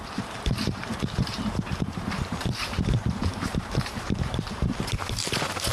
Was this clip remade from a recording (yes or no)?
yes